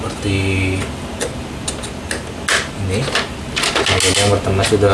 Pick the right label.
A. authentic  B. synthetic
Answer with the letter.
A